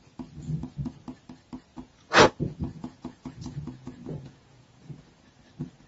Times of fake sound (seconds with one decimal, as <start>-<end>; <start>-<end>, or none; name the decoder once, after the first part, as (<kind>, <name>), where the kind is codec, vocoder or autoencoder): 1.7-5.2 (vocoder, Vocos)